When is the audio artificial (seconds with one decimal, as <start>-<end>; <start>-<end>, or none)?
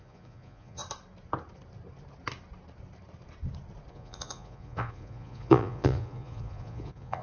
0.0-0.8; 3.9-7.2